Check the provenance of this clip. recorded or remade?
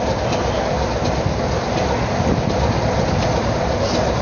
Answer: recorded